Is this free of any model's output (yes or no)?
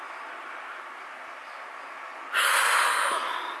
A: yes